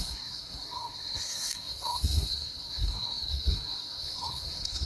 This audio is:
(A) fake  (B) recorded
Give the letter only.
A